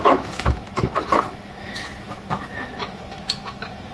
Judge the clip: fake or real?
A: fake